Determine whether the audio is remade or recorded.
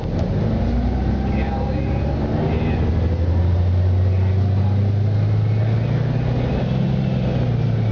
recorded